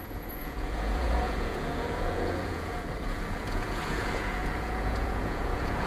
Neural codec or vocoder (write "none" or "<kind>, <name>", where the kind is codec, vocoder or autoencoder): vocoder, Vocos